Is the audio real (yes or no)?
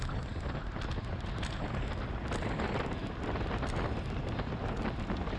yes